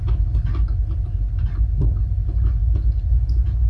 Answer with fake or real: real